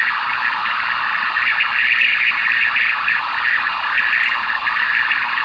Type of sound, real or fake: real